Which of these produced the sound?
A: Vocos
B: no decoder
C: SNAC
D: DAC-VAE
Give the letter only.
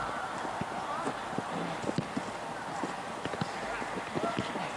B